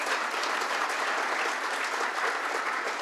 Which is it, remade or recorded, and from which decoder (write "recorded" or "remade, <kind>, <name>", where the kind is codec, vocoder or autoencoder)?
recorded